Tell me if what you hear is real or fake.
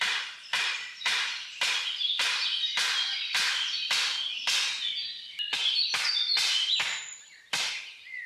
real